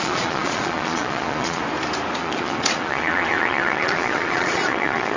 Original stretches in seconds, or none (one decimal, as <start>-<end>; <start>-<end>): 1.6-2.2